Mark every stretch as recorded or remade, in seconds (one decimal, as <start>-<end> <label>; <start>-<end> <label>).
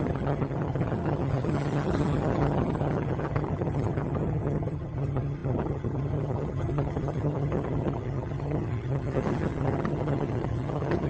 0.0-11.1 remade